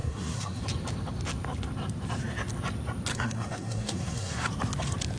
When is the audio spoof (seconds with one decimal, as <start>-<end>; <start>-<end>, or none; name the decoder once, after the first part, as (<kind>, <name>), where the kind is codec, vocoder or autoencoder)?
0.0-0.6 (codec, SNAC); 3.1-4.5